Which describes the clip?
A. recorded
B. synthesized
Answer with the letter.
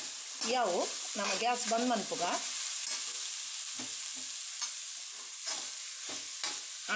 A